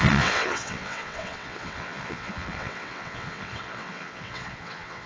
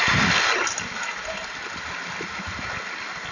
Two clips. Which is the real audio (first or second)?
second